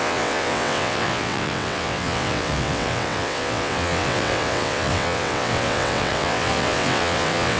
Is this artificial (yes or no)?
yes